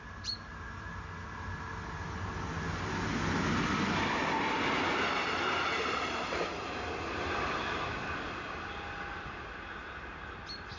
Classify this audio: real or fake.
real